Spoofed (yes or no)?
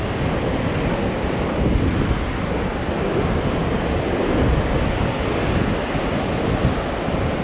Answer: no